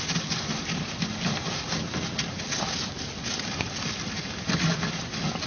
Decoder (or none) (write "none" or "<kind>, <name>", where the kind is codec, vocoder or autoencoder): none